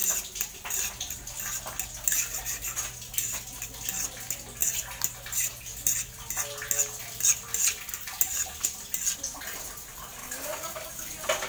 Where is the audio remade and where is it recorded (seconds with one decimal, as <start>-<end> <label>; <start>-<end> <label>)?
0.0-10.2 recorded; 10.2-11.1 remade; 11.1-11.5 recorded

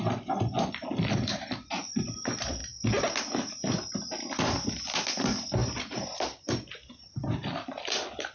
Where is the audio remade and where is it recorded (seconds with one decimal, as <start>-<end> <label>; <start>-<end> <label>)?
0.0-8.3 recorded

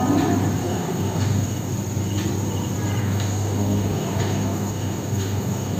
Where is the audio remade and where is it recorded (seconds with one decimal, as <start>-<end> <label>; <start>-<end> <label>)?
0.0-0.6 recorded; 0.6-1.7 remade; 1.7-3.0 recorded; 3.0-5.8 remade

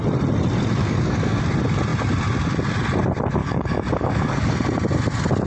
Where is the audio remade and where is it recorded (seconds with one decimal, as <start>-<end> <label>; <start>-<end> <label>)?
0.0-0.8 recorded; 0.8-1.4 remade; 1.4-3.4 recorded; 3.4-4.5 remade; 4.5-5.5 recorded

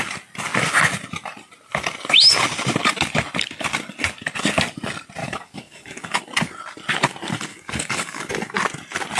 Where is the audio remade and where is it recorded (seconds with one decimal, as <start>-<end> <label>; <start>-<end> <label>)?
0.0-5.2 recorded; 5.2-6.2 remade; 6.2-7.5 recorded; 7.5-8.3 remade; 8.3-9.2 recorded